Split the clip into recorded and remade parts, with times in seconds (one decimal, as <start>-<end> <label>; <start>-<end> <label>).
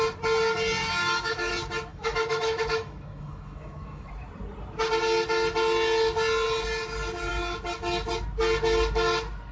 0.0-0.8 recorded; 0.8-1.5 remade; 1.5-1.9 recorded; 1.9-4.1 remade; 4.1-9.5 recorded